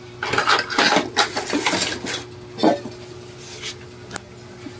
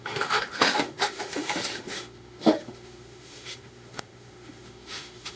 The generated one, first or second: second